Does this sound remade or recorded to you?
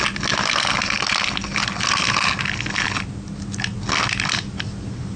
recorded